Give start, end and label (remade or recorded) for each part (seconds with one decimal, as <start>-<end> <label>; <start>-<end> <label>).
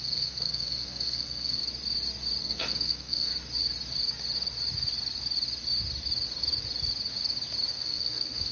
0.0-1.6 remade; 1.6-2.4 recorded; 2.4-3.3 remade; 3.3-7.7 recorded; 7.7-8.5 remade